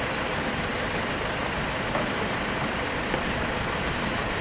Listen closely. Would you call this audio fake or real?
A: fake